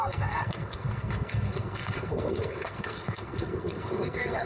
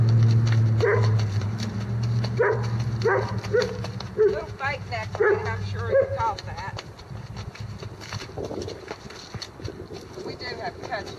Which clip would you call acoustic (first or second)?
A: second